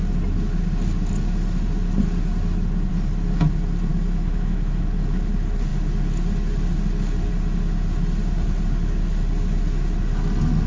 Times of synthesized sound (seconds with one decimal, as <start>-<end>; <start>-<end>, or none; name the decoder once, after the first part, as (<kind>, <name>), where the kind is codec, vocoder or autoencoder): 3.9-4.8 (autoencoder, DAC-VAE)